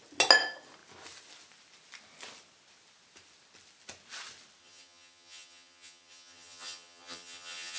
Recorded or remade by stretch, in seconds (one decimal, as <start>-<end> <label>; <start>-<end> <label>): 0.0-4.6 recorded; 4.6-7.8 remade